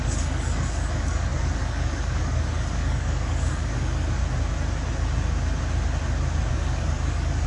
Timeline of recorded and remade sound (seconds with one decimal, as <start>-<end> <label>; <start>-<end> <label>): 0.0-4.2 remade; 4.2-6.5 recorded; 6.5-7.5 remade

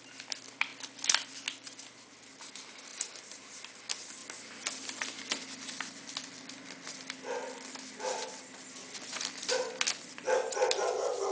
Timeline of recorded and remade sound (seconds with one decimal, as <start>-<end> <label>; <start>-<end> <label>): 0.0-11.3 recorded

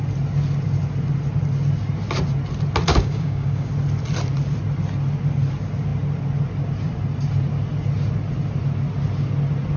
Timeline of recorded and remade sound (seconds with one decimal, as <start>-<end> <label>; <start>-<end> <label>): 0.0-2.9 recorded; 2.9-3.7 remade; 3.7-9.8 recorded